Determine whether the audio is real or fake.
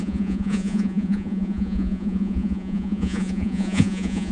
fake